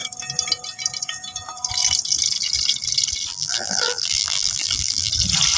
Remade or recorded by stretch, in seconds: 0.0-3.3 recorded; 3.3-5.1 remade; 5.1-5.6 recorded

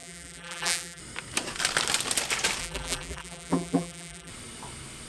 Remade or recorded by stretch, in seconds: 0.0-1.0 remade; 1.0-2.6 recorded; 2.6-4.3 remade; 4.3-5.1 recorded

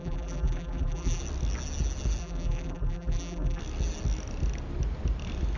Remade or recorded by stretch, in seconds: 0.0-1.2 remade; 1.2-2.2 recorded; 2.2-3.6 remade; 3.6-5.6 recorded

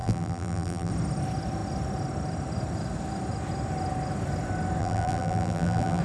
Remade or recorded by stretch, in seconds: 0.0-0.9 remade; 0.9-4.8 recorded; 4.8-6.0 remade